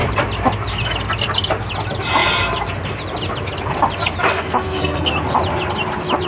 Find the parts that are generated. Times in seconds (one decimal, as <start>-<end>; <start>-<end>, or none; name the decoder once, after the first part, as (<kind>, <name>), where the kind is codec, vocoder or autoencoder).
4.3-5.1 (codec, SNAC)